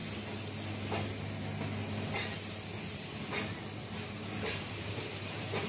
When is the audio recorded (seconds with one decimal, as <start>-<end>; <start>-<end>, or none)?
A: 0.0-3.8